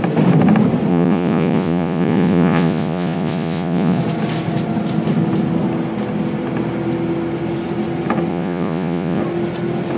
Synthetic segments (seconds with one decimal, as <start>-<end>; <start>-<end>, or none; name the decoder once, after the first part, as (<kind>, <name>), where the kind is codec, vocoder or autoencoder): 0.9-4.0 (vocoder, Vocos); 8.3-9.2